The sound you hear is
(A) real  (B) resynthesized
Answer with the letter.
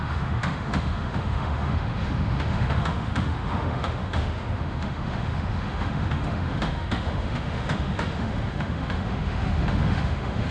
B